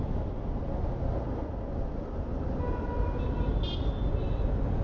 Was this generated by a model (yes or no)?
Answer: no